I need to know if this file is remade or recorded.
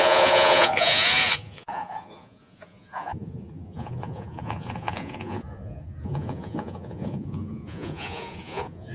remade